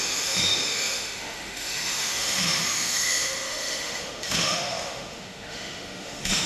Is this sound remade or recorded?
remade